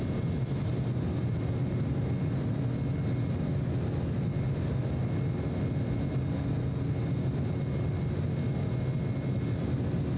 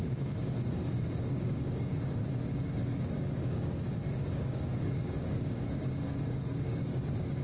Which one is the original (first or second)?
first